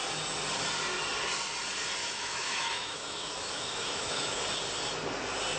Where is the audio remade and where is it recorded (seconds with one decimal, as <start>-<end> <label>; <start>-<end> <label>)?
0.0-2.0 recorded; 2.0-4.4 remade; 4.4-5.6 recorded